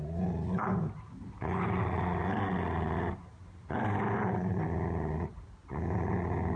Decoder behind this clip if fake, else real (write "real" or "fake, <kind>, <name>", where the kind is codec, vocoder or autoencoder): real